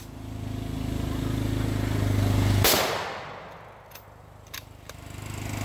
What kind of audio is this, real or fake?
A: real